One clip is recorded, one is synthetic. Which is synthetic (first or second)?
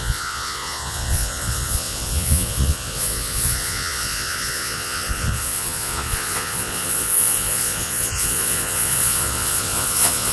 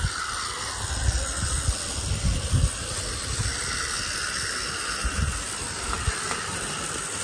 first